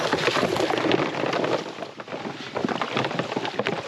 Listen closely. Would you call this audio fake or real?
real